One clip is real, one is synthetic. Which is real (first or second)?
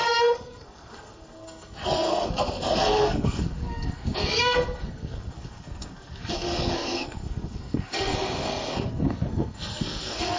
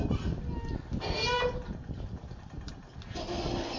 second